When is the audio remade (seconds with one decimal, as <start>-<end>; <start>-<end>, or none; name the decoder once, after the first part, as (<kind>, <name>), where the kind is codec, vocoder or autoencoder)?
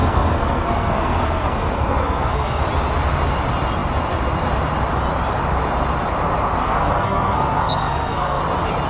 0.0-2.6 (codec, SNAC); 6.6-8.4